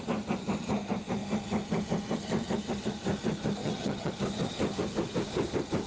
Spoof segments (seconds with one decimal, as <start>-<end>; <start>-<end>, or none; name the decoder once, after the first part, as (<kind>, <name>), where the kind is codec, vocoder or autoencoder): 3.6-4.1 (vocoder, HiFi-GAN)